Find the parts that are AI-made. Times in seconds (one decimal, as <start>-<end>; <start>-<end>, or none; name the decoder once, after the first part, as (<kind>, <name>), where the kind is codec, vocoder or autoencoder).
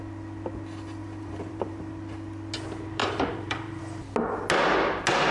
1.0-1.9 (vocoder, BigVGAN v2); 3.0-3.8